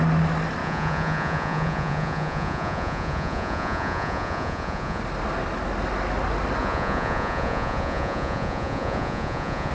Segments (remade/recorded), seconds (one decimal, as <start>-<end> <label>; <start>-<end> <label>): 0.0-0.6 recorded; 0.6-5.0 remade; 5.0-6.6 recorded; 6.6-9.7 remade